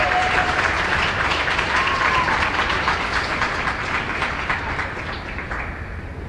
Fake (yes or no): yes